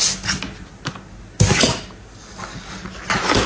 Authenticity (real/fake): real